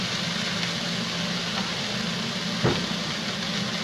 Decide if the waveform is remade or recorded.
recorded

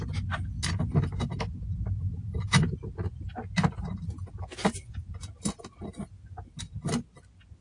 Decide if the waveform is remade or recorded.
recorded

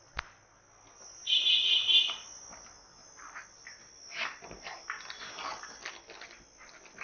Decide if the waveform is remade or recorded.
recorded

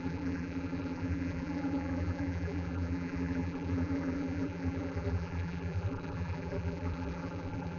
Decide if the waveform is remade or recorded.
remade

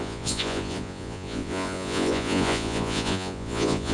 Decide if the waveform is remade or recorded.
remade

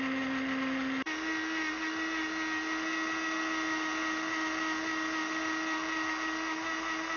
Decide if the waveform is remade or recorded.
recorded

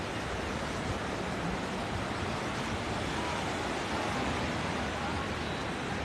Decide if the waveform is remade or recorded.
recorded